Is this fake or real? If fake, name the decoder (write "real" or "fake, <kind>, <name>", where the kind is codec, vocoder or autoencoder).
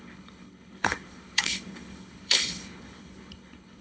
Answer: fake, codec, HILCodec